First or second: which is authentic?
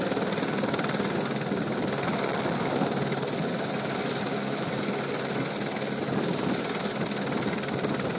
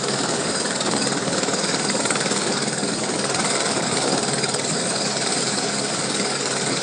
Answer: first